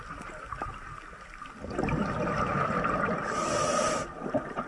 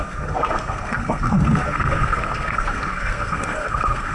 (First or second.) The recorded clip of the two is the first